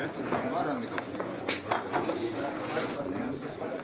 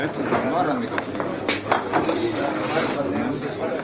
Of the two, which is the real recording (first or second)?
second